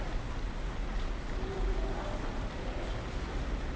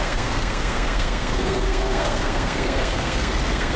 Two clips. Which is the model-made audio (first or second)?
second